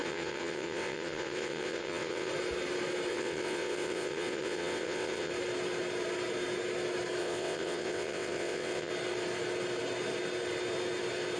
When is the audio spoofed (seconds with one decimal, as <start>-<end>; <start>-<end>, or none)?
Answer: 0.0-2.3; 3.1-5.3; 7.2-8.9